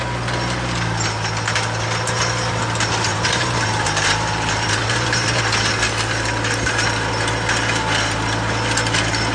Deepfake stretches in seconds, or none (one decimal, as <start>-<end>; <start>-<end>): 3.1-5.4